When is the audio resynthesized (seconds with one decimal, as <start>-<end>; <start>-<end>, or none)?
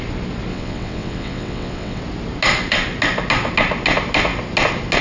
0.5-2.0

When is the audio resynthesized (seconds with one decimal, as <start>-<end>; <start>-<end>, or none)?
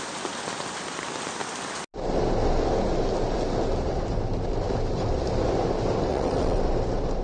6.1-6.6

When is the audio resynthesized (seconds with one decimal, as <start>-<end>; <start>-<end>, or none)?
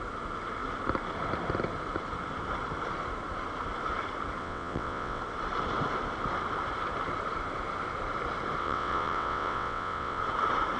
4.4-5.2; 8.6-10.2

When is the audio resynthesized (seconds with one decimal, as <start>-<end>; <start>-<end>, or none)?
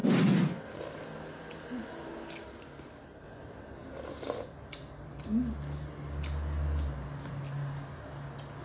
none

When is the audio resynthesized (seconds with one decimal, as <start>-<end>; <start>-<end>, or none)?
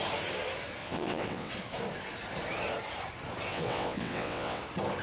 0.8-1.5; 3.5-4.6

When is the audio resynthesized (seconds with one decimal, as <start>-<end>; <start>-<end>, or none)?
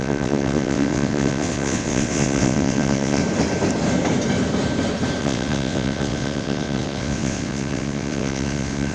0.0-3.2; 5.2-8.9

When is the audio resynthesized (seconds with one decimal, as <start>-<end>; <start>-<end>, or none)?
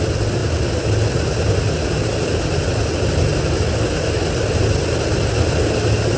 none